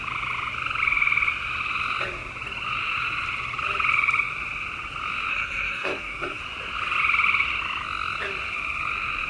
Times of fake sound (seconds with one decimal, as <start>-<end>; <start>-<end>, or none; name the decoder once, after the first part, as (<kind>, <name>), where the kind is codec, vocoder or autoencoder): 5.3-6.4 (codec, SNAC)